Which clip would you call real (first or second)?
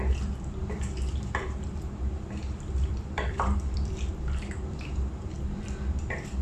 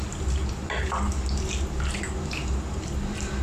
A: second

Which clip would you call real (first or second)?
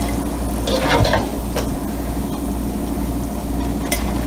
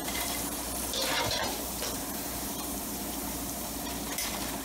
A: first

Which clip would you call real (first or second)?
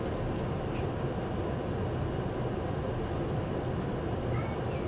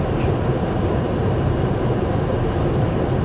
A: first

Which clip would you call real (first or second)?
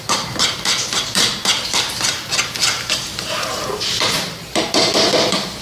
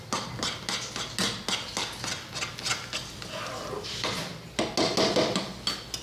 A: second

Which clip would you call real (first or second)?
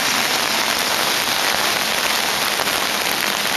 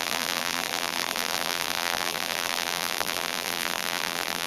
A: first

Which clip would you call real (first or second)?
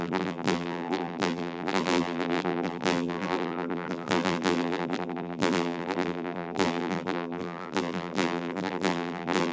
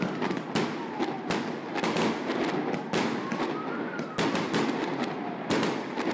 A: second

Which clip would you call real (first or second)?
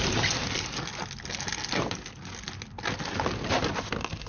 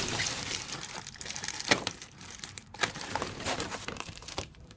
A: first